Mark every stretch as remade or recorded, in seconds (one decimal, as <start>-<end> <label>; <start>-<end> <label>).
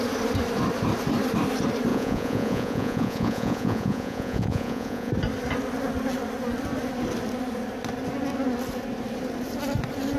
0.0-1.9 recorded; 1.9-5.1 remade; 5.1-10.2 recorded